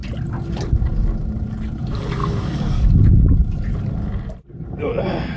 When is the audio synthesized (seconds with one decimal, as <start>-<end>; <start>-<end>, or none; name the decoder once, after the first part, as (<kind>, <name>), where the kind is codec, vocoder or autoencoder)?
2.2-2.9 (codec, DAC)